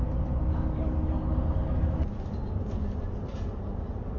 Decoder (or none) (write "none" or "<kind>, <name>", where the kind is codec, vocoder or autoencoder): none